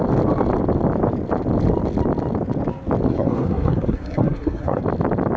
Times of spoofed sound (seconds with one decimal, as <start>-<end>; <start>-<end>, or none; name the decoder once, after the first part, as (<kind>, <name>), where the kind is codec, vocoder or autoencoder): 3.1-4.8 (codec, SNAC)